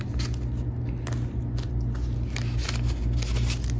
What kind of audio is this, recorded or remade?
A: recorded